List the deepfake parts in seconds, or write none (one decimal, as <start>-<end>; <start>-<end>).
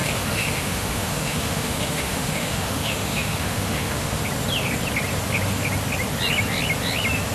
0.0-4.2